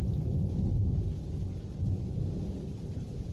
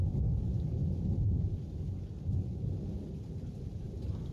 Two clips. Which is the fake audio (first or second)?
second